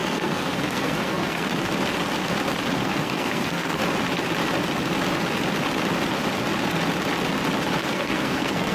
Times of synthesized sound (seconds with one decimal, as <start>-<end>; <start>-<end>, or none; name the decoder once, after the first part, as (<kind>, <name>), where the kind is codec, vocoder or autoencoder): 0.0-1.5 (codec, SNAC); 2.8-3.8; 7.8-8.7